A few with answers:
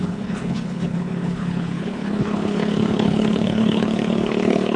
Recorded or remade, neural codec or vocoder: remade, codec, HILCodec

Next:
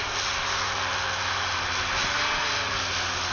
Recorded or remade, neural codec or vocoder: recorded